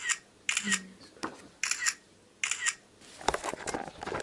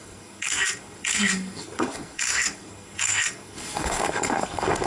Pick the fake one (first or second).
second